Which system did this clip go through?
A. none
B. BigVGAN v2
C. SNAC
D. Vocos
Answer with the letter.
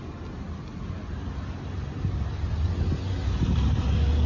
A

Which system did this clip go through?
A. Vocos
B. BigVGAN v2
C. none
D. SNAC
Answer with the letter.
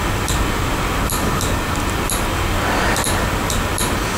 C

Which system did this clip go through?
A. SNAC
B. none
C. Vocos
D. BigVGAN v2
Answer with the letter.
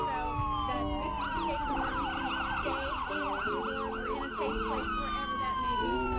B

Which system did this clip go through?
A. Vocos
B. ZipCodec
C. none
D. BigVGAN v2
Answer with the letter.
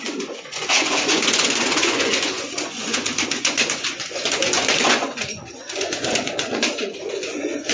A